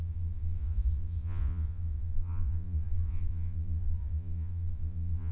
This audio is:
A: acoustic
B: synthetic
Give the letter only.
B